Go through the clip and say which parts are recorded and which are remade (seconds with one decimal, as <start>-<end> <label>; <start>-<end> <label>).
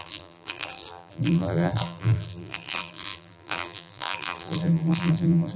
0.0-5.6 remade